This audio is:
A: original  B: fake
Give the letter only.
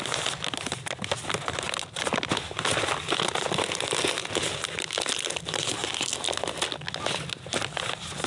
A